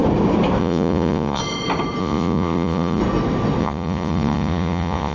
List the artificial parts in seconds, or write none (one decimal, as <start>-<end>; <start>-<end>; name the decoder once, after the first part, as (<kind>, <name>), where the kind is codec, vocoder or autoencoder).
0.6-1.4 (vocoder, Vocos); 2.0-3.0; 3.6-5.1